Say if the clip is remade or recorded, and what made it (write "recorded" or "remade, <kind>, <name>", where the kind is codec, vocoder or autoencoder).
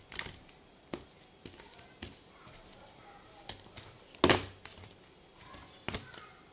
recorded